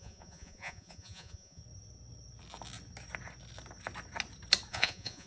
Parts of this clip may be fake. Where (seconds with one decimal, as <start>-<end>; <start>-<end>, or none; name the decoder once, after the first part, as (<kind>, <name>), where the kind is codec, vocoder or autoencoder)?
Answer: 0.0-1.6 (vocoder, Vocos); 4.7-5.3